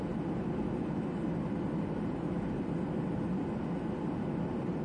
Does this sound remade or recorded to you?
recorded